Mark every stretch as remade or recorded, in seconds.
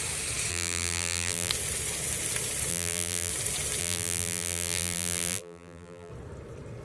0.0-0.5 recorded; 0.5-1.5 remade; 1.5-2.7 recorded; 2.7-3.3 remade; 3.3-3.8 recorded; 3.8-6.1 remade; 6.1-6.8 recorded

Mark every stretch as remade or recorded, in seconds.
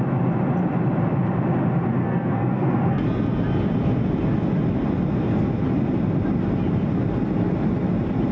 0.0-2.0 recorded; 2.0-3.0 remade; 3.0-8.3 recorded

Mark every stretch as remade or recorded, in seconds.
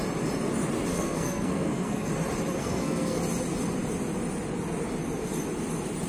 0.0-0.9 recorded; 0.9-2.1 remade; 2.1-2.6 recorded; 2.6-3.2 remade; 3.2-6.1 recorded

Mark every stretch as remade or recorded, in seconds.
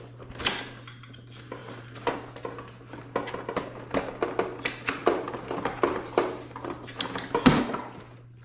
0.0-1.6 recorded; 1.6-2.1 remade; 2.1-5.0 recorded; 5.0-7.8 remade; 7.8-8.4 recorded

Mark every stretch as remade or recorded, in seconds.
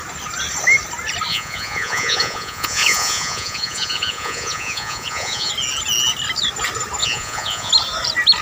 0.0-1.3 recorded; 1.3-5.5 remade; 5.5-7.0 recorded; 7.0-7.7 remade; 7.7-8.4 recorded